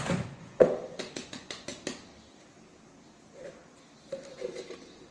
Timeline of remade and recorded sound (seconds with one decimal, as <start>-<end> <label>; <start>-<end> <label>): 0.0-1.7 remade; 1.7-5.1 recorded